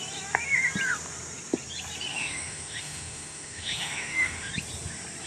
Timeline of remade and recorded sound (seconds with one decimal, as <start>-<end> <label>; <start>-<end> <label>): 0.0-2.1 recorded; 2.1-4.5 remade; 4.5-5.3 recorded